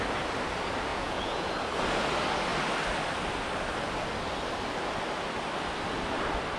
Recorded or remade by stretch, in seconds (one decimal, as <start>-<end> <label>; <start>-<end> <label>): 0.0-0.9 recorded; 0.9-1.5 remade; 1.5-6.6 recorded